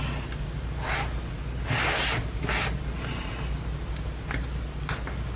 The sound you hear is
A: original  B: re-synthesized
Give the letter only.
A